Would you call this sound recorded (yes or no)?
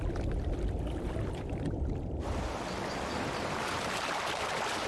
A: no